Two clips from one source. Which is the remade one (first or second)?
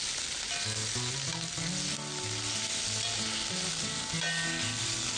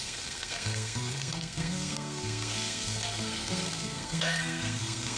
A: second